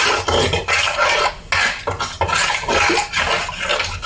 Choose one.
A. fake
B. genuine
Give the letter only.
B